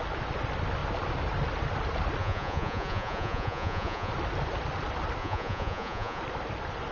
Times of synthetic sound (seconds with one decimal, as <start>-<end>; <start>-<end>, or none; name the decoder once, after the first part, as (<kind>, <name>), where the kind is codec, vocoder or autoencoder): 2.2-4.1 (vocoder, Vocos); 5.2-6.2